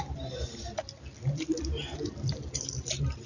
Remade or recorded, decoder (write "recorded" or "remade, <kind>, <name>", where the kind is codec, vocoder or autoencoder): recorded